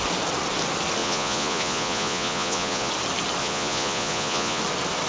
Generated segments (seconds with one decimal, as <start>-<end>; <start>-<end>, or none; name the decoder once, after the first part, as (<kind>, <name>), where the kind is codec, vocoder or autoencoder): 1.0-2.9 (vocoder, Vocos); 3.4-4.6